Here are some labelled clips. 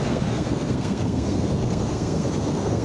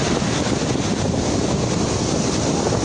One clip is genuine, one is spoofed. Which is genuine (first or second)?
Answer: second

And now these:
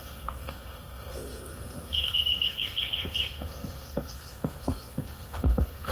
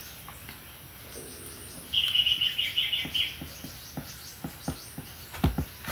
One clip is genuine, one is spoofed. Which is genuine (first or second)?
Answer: second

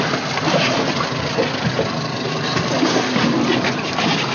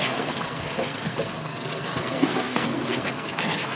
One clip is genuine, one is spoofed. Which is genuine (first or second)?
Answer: first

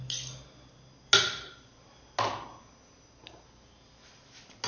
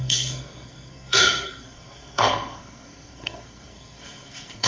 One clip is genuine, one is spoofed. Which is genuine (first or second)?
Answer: first